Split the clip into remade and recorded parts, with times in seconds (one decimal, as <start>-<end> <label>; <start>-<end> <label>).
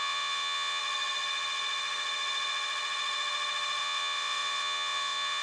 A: 0.0-0.8 remade; 0.8-3.8 recorded; 3.8-5.4 remade